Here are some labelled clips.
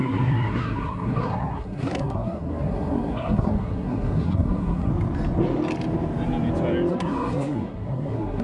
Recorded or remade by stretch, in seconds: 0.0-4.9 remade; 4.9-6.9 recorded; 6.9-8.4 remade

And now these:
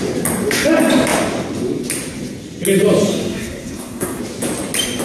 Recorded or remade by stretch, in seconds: 0.0-3.1 recorded; 3.1-4.2 remade; 4.2-5.0 recorded

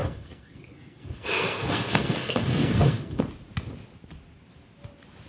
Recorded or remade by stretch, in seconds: 0.0-3.2 remade; 3.2-5.3 recorded

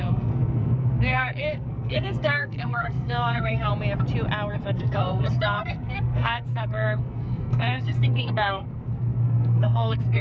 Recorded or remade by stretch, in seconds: 0.0-3.7 remade; 3.7-4.5 recorded; 4.5-10.2 remade